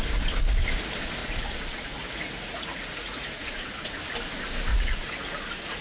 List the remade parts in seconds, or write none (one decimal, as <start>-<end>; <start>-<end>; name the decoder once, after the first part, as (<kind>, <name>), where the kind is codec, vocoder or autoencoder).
1.2-4.0 (vocoder, Vocos); 4.7-5.8